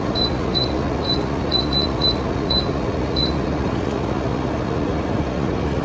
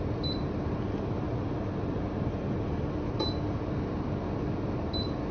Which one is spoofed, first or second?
first